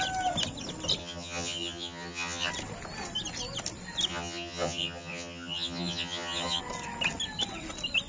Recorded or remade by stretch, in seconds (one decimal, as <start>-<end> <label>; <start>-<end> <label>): 0.0-1.0 recorded; 1.0-2.5 remade; 2.5-4.1 recorded; 4.1-6.6 remade; 6.6-8.1 recorded